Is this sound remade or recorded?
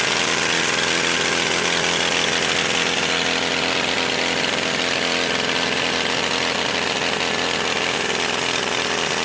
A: recorded